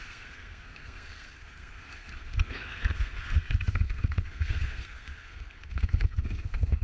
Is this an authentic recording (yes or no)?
no